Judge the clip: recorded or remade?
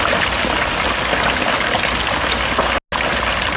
recorded